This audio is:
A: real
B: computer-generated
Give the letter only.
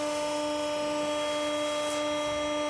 A